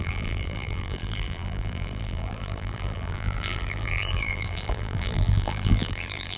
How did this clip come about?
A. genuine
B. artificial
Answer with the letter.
B